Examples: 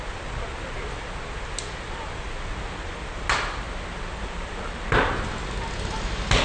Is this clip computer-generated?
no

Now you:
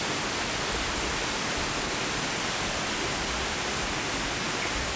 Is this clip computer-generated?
no